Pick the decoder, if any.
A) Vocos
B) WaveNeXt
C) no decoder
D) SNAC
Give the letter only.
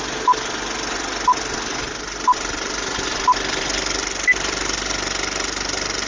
C